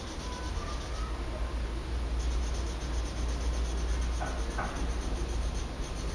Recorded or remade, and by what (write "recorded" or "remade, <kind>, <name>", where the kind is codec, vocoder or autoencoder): recorded